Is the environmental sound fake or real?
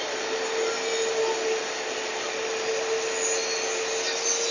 real